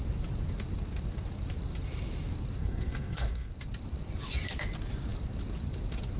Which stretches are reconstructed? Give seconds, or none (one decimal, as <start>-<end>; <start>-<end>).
2.6-3.5